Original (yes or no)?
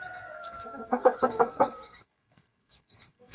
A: no